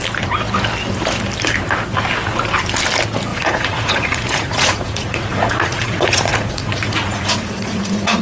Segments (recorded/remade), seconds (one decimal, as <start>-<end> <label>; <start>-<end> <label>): 0.0-3.3 recorded; 3.3-8.2 remade